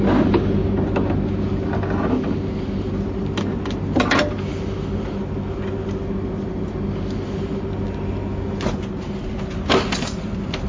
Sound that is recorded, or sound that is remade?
recorded